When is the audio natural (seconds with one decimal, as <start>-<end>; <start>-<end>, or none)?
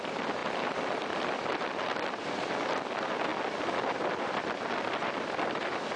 0.0-6.0